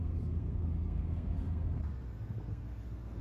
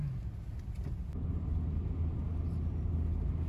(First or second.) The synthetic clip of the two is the first